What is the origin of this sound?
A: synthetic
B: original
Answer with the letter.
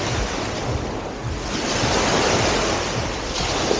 B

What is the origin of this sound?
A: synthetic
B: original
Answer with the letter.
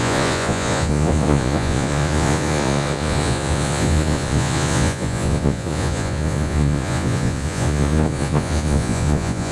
A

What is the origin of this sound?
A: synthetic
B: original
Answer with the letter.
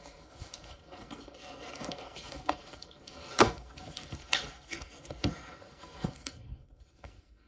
A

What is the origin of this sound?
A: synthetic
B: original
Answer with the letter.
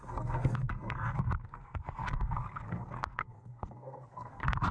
A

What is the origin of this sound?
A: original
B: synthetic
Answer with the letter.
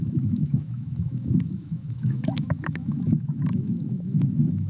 B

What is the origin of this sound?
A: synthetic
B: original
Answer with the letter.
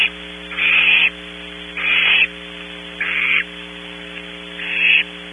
B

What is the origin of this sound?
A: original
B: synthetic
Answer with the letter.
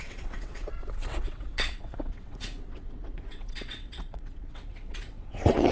B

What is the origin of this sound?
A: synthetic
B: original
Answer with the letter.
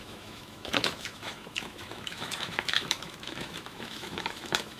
A